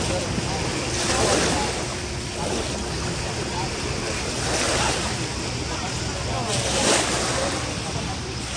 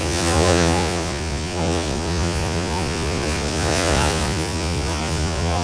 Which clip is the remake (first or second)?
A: second